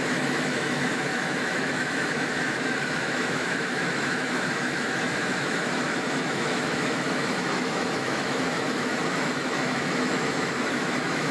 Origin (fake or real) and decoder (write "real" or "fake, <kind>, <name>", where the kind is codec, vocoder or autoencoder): fake, autoencoder, DAC-VAE